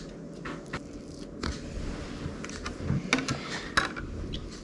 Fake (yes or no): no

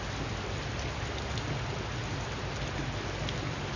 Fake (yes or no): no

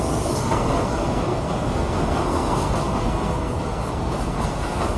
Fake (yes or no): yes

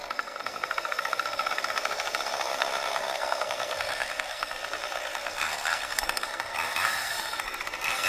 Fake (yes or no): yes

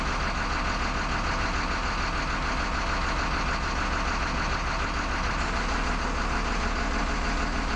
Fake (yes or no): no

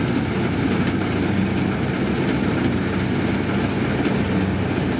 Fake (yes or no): no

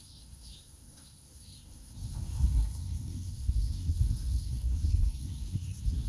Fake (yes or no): yes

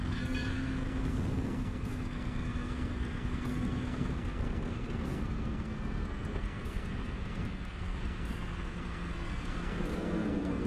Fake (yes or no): yes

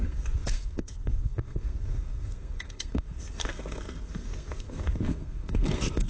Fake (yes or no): yes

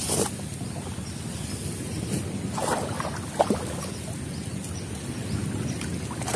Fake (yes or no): no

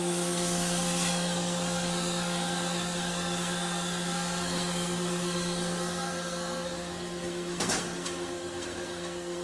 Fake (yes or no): yes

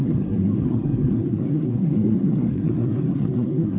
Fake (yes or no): yes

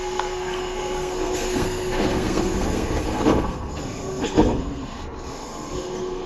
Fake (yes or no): yes